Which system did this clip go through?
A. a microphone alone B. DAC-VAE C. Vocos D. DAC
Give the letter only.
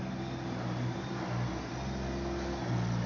A